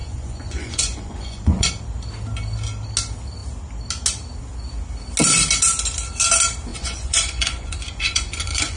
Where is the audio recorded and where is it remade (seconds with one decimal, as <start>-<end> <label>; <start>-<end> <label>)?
0.0-1.7 remade; 1.7-6.7 recorded; 6.7-8.8 remade

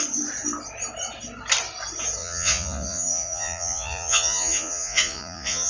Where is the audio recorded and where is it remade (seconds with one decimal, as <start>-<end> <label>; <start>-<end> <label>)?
0.0-2.2 recorded; 2.2-5.7 remade

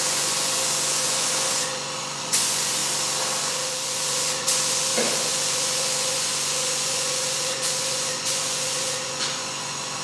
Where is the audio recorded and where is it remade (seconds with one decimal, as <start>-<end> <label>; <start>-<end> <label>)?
0.0-2.8 remade; 2.8-3.4 recorded; 3.4-10.0 remade

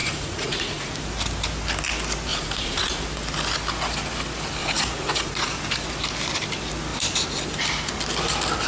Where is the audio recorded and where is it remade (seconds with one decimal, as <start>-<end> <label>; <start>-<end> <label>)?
0.0-0.9 remade; 0.9-2.3 recorded; 2.3-3.0 remade; 3.0-4.6 recorded; 4.6-5.5 remade; 5.5-8.7 recorded

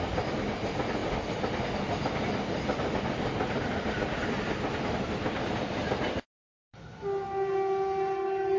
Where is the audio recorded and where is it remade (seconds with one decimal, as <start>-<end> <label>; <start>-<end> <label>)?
0.0-8.6 recorded